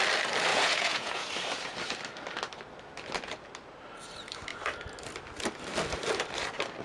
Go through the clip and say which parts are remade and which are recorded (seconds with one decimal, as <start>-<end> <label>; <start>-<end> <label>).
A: 0.0-0.5 recorded; 0.5-1.3 remade; 1.3-6.8 recorded